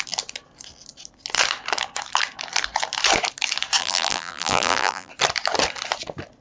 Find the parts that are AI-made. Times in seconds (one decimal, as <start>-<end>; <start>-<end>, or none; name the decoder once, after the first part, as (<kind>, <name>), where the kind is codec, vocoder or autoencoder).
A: 3.8-5.1 (vocoder, BigVGAN v2)